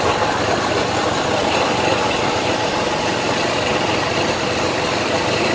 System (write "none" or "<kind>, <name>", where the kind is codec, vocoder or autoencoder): none